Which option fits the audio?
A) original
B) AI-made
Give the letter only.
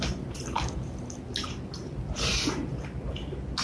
A